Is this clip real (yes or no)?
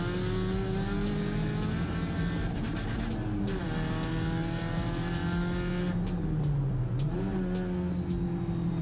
yes